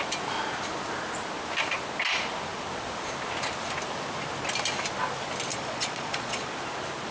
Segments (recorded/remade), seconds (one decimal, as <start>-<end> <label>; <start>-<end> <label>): 0.0-5.5 recorded; 5.5-6.5 remade; 6.5-7.1 recorded